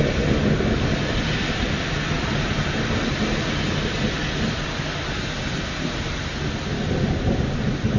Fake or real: real